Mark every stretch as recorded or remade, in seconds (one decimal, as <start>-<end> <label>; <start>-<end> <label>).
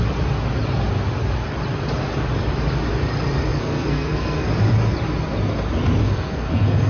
0.0-3.5 recorded; 3.5-4.5 remade; 4.5-6.0 recorded; 6.0-6.9 remade